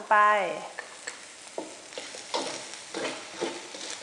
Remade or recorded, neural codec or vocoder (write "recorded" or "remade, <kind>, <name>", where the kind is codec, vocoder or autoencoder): recorded